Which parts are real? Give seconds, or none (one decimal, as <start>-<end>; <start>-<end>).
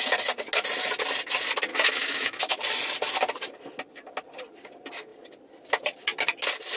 0.0-1.7; 2.6-6.8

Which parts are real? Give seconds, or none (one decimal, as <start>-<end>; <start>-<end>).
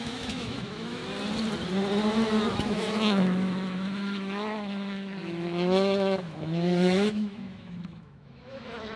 1.0-2.5